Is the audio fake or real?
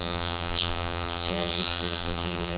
fake